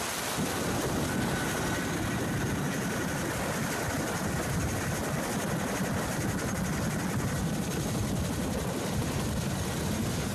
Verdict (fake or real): real